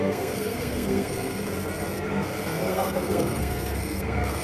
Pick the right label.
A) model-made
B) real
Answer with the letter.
A